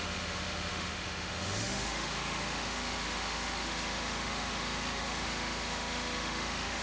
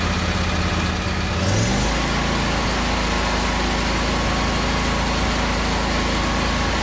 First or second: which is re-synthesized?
first